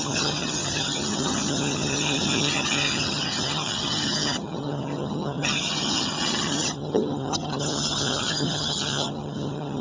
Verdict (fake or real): fake